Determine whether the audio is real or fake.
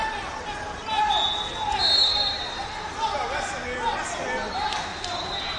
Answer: real